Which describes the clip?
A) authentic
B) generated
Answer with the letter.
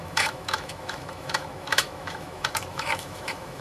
B